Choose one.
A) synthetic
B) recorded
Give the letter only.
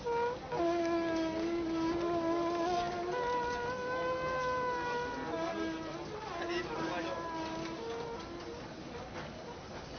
B